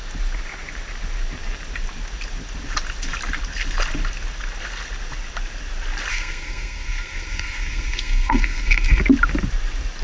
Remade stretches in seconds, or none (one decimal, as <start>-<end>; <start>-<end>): 6.1-9.0